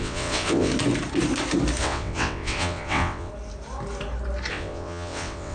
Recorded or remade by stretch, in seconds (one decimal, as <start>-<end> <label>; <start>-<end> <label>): 0.0-0.7 remade; 0.7-1.8 recorded; 1.8-3.3 remade; 3.3-4.5 recorded; 4.5-5.5 remade